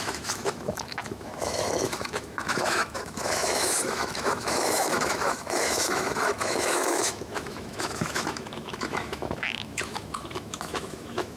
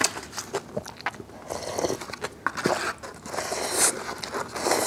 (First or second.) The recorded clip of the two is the second